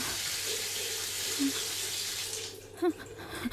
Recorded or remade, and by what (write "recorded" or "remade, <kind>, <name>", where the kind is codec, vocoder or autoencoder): recorded